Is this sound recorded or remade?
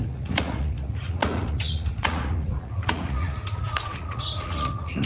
remade